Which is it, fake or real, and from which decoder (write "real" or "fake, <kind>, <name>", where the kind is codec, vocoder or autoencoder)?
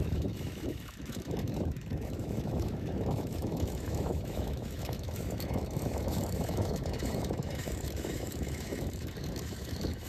fake, autoencoder, DAC-VAE